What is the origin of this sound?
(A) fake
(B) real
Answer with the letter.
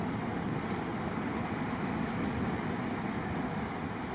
B